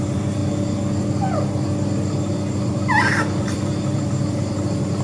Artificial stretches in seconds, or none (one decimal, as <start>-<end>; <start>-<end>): 0.0-0.4; 3.4-5.0